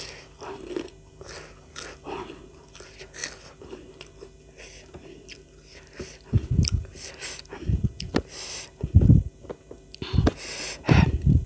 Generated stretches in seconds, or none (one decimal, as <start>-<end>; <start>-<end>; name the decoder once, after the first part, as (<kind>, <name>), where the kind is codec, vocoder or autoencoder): none